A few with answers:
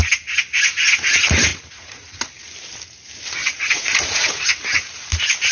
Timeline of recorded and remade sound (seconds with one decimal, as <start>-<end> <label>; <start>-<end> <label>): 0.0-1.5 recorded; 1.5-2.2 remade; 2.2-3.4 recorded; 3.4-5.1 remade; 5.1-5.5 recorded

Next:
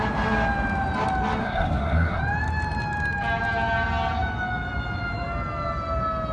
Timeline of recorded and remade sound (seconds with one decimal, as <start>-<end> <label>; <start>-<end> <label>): 0.0-1.4 recorded; 1.4-2.2 remade; 2.2-6.3 recorded

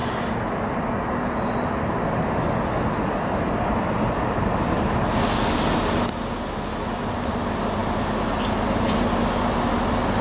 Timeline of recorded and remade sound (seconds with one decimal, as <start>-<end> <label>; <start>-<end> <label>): 0.0-10.2 recorded

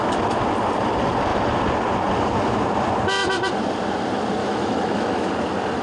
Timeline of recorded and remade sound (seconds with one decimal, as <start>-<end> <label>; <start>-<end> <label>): 0.0-4.4 recorded; 4.4-5.3 remade; 5.3-5.8 recorded

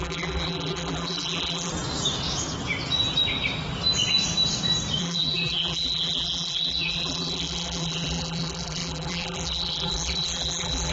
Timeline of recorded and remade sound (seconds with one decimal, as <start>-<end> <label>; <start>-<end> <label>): 0.0-1.7 remade; 1.7-5.0 recorded; 5.0-10.9 remade

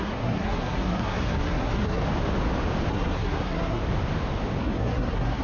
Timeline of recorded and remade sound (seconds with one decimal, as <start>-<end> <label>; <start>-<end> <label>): 0.0-2.0 remade; 2.0-2.9 recorded; 2.9-3.8 remade; 3.8-4.6 recorded; 4.6-5.4 remade